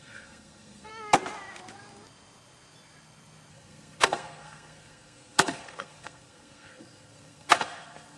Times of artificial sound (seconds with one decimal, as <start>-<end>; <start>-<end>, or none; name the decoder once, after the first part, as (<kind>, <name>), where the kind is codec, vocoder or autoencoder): 0.0-0.9 (codec, SNAC); 3.5-8.2